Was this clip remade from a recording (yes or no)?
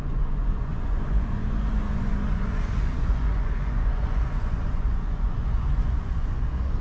yes